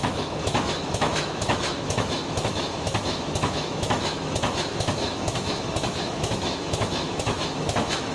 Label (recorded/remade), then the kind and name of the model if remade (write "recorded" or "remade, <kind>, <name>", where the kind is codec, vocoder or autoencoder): remade, autoencoder, DAC-VAE